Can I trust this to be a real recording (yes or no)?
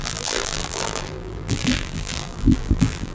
no